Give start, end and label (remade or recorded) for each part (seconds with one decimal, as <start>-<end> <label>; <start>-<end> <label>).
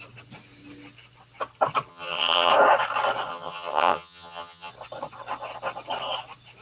0.0-1.9 recorded; 1.9-2.5 remade; 2.5-3.3 recorded; 3.3-4.7 remade; 4.7-6.6 recorded